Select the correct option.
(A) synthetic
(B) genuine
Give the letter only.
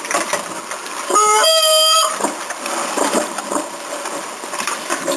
A